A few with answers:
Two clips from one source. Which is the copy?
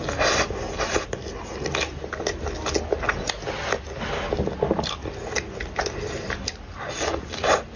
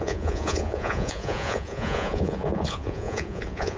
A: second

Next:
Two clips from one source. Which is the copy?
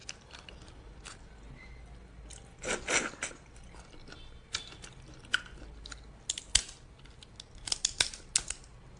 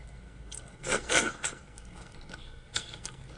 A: second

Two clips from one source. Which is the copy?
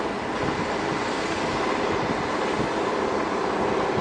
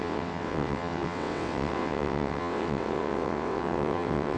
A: second